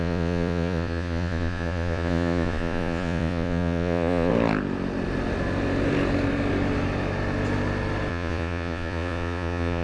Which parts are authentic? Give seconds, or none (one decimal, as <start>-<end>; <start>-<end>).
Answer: 4.3-8.1